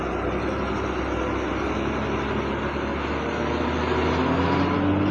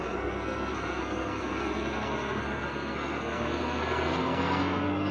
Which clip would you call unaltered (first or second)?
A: first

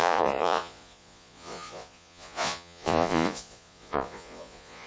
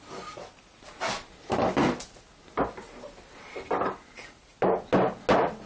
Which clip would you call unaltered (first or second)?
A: second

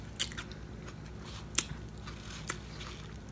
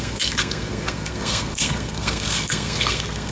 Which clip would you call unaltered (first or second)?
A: first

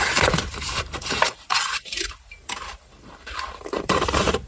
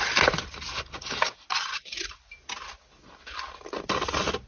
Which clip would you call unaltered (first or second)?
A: second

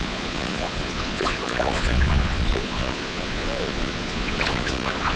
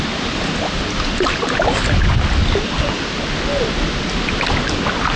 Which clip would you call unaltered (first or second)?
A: second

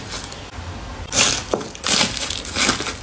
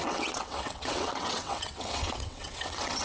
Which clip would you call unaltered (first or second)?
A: first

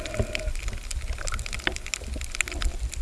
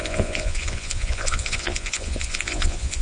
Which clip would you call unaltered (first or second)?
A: first